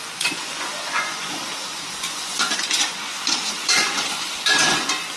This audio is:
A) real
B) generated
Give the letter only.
B